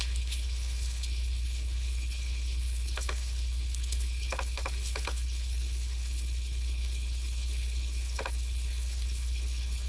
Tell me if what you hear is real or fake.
fake